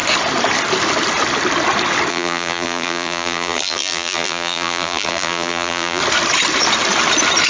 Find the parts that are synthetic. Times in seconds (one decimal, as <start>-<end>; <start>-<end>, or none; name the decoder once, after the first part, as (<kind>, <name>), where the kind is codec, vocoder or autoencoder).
2.1-6.0 (vocoder, BigVGAN v2)